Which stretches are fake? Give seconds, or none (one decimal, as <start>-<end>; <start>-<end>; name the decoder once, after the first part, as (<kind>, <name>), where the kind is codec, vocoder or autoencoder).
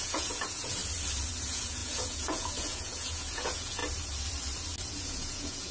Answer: 0.0-0.8 (vocoder, Vocos); 1.4-3.8; 4.8-5.7